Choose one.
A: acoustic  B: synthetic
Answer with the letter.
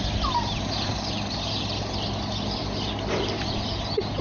A